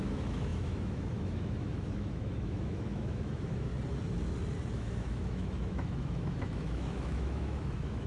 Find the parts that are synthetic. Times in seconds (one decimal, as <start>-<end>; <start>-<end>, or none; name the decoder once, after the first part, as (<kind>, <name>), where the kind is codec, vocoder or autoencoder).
0.0-3.7 (autoencoder, DAC-VAE); 4.7-8.1